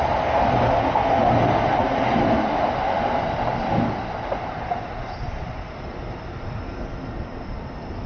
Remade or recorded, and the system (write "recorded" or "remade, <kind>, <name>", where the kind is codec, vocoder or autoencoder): recorded